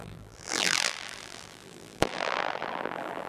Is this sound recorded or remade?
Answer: remade